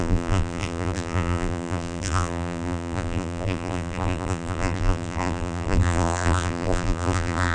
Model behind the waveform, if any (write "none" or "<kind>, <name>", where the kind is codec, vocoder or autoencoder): vocoder, BigVGAN v2